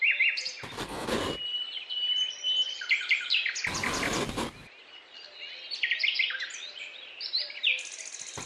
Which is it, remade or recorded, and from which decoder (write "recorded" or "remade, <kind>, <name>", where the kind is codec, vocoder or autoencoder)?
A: recorded